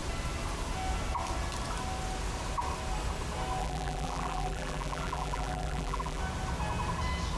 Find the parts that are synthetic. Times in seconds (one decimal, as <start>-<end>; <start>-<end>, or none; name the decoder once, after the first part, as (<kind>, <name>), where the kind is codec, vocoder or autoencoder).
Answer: 3.6-6.2 (vocoder, BigVGAN v2)